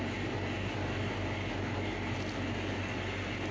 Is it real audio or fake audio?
real